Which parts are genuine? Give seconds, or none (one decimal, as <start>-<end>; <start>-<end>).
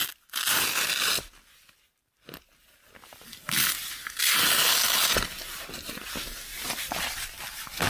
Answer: 0.0-7.9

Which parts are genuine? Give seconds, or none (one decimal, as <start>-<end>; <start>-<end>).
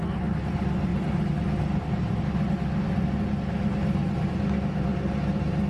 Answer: 0.0-5.7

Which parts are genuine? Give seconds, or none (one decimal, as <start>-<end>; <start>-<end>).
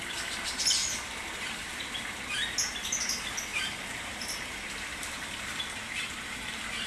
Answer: 0.0-0.8; 1.8-3.5; 5.9-6.9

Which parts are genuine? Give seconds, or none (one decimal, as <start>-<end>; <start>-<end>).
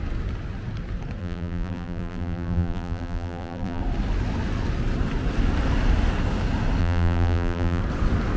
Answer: 0.0-1.2; 3.8-6.8; 7.8-8.4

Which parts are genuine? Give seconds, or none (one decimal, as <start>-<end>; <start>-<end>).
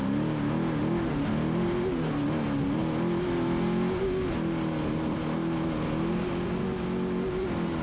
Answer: 0.0-7.8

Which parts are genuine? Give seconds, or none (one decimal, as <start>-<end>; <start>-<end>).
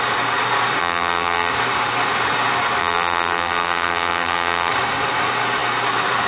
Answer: 0.0-0.8; 1.5-2.8; 4.7-6.3